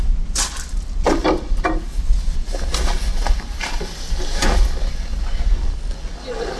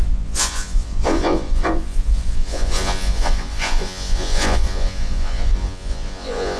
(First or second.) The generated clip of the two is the second